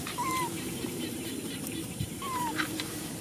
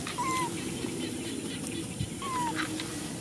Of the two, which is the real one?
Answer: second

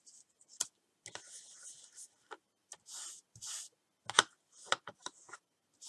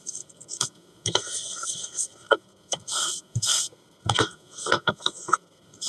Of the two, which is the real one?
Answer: first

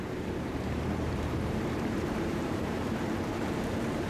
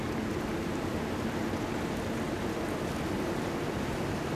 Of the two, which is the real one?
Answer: second